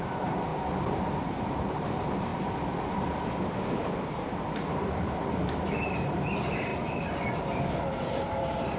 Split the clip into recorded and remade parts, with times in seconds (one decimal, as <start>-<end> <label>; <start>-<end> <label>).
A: 0.0-0.5 remade; 0.5-1.0 recorded; 1.0-2.3 remade; 2.3-3.5 recorded; 3.5-6.7 remade; 6.7-7.4 recorded; 7.4-8.8 remade